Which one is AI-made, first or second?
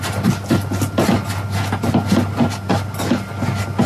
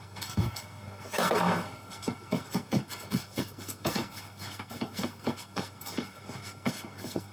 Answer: second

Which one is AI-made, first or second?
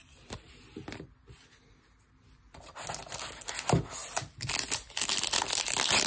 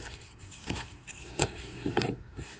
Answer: second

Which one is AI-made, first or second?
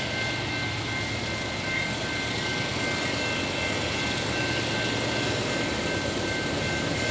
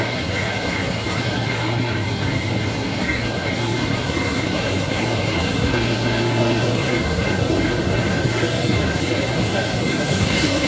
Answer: second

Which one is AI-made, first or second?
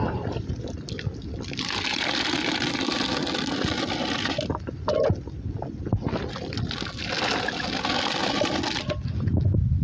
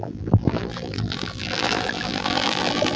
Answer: second